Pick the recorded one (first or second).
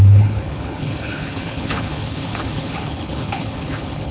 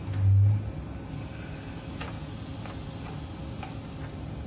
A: second